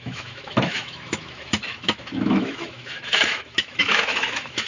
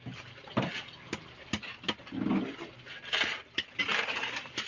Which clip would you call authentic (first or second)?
second